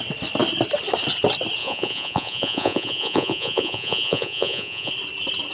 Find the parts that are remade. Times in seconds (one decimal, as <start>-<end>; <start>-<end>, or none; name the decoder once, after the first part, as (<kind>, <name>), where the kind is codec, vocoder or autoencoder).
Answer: 1.6-4.9 (vocoder, Vocos)